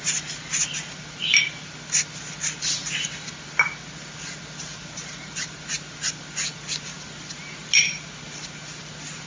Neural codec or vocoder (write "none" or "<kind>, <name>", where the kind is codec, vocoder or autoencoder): none